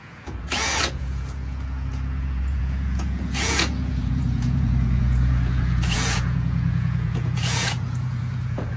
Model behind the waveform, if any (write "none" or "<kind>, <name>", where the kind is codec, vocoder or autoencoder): vocoder, Vocos